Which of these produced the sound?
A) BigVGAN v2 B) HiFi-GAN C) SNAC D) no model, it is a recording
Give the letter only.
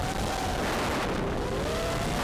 D